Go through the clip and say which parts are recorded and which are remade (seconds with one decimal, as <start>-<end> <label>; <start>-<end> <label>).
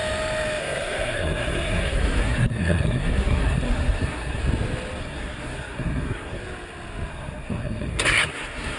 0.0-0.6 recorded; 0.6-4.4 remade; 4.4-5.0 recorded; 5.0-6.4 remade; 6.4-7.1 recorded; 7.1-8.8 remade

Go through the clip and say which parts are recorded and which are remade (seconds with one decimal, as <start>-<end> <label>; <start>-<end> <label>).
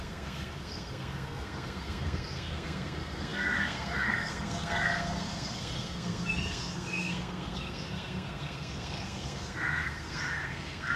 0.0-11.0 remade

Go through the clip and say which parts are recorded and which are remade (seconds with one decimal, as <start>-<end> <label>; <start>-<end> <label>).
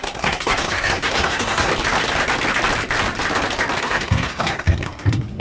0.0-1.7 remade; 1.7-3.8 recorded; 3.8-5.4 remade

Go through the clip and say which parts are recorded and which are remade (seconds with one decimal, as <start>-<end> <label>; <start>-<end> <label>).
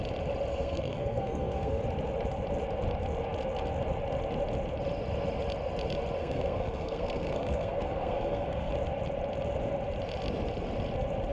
0.0-0.5 recorded; 0.5-1.8 remade; 1.8-6.2 recorded; 6.2-8.7 remade; 8.7-11.3 recorded